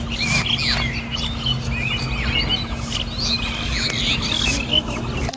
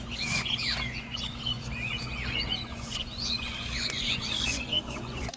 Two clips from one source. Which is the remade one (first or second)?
second